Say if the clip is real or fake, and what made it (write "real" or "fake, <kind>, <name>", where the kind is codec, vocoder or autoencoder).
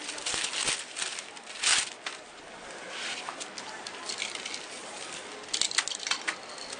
real